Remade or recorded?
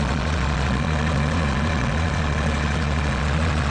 remade